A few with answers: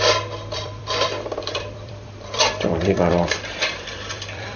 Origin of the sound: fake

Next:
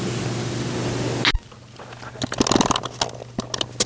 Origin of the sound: real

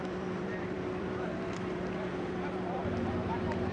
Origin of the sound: fake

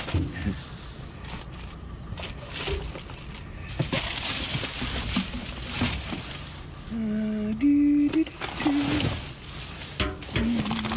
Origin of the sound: real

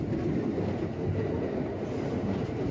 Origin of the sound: real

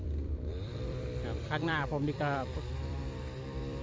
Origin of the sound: fake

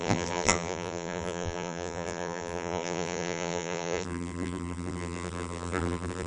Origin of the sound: fake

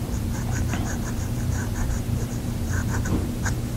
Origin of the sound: fake